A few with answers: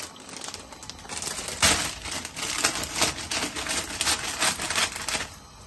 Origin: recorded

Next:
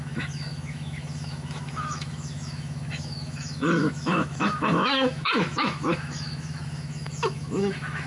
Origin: remade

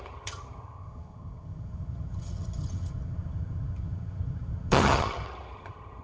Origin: remade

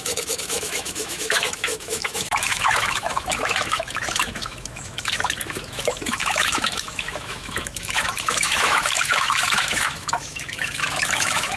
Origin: remade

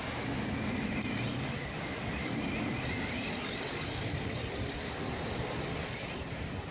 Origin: recorded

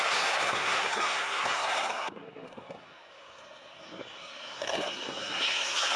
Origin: remade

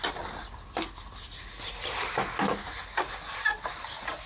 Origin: recorded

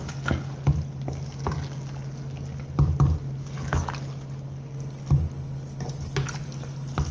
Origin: recorded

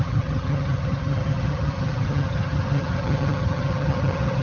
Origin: remade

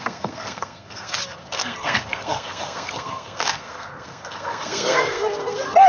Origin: remade